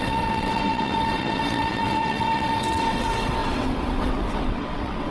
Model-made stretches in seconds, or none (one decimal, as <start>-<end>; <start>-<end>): 0.0-5.1